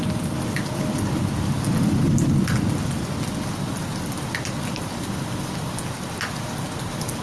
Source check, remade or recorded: recorded